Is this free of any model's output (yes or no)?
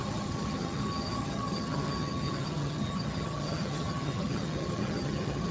no